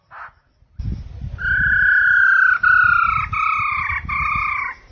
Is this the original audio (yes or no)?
yes